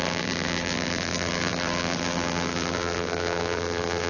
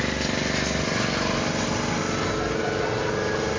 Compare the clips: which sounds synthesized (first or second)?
first